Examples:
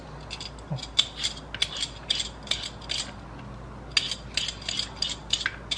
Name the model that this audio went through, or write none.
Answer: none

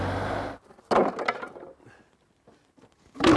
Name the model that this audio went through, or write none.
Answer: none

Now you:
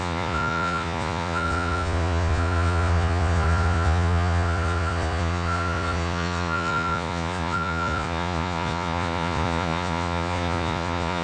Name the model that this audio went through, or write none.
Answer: vocoder, Vocos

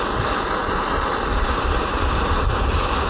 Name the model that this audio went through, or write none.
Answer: none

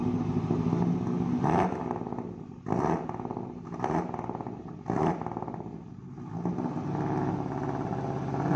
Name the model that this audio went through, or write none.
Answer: none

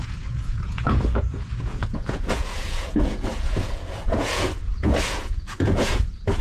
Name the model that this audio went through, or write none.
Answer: vocoder, Vocos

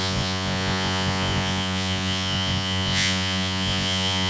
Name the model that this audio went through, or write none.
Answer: vocoder, Vocos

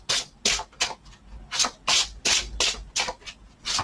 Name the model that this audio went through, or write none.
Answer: none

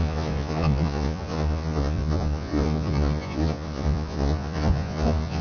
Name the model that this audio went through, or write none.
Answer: vocoder, Vocos